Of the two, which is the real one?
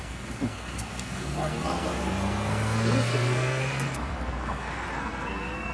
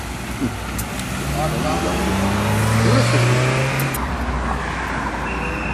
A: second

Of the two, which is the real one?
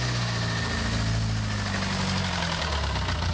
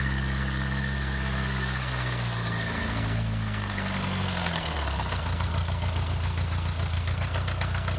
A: first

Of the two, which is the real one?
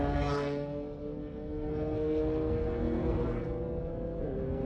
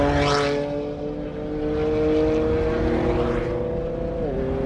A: second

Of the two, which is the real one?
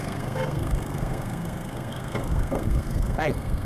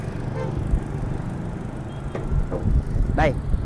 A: second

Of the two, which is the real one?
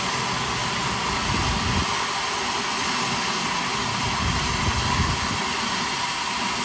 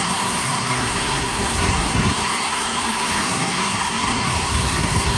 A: first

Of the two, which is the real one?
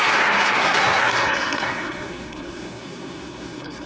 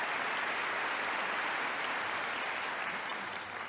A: second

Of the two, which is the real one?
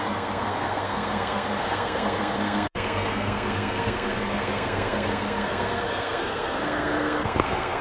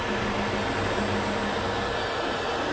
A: second